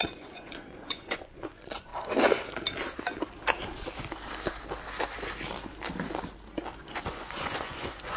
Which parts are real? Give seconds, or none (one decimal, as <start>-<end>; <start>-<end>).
1.9-6.8

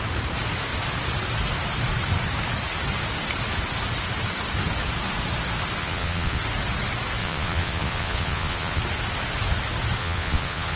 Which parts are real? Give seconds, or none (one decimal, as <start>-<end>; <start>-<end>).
0.0-5.8; 6.4-7.2; 8.8-10.0

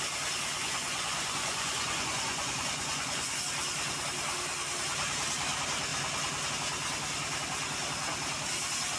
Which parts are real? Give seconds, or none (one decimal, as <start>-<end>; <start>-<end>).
0.0-0.6; 3.4-9.0

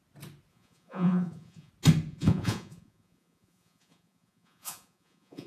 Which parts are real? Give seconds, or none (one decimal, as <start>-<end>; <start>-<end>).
0.0-0.5; 1.7-2.1